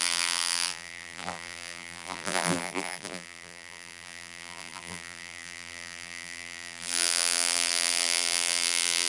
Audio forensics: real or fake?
fake